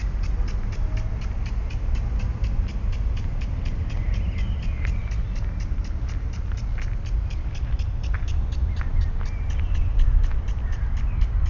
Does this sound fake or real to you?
real